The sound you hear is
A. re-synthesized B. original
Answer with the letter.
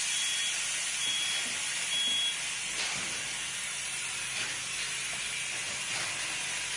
B